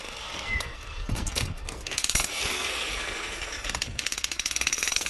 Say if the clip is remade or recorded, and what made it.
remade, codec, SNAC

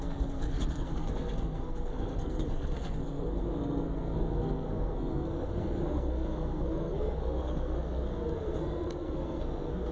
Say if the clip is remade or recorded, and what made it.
remade, codec, SNAC